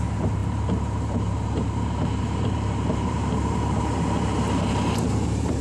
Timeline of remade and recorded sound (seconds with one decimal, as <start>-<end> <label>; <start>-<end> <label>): 0.0-5.6 remade